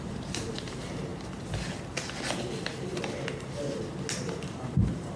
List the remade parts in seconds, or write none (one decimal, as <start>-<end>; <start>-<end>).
0.0-1.1; 4.2-5.2